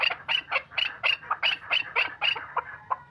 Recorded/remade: remade